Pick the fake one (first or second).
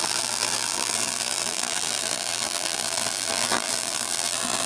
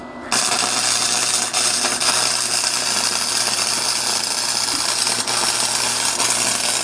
first